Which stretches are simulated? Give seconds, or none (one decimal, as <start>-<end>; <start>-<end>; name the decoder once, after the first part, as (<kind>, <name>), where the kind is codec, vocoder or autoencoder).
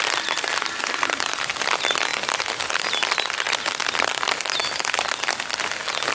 0.0-6.1 (vocoder, BigVGAN v2)